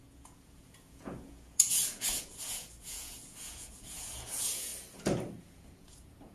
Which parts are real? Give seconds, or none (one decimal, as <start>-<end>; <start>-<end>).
4.7-5.4